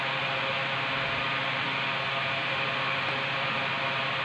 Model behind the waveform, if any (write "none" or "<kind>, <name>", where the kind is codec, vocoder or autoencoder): none